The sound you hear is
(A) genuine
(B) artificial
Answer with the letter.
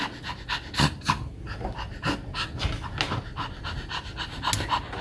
A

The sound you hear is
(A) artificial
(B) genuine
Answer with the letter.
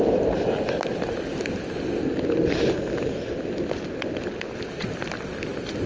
B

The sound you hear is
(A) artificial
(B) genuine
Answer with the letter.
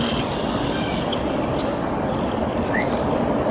A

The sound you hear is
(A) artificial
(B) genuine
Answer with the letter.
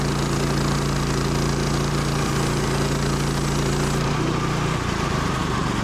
A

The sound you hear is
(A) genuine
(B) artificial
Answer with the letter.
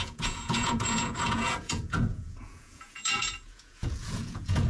B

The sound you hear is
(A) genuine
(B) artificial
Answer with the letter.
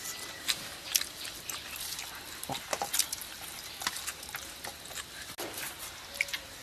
A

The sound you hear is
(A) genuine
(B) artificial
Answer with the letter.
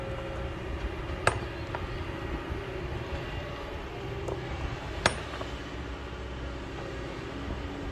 A